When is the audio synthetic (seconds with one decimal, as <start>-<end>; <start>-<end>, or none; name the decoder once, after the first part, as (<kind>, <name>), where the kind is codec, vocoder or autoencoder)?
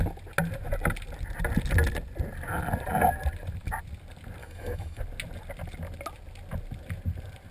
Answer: 4.4-5.0 (autoencoder, DAC-VAE)